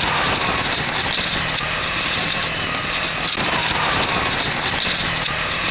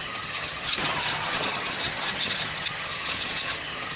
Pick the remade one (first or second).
second